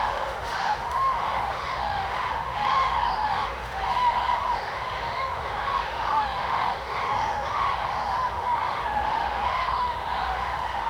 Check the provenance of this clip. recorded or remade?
remade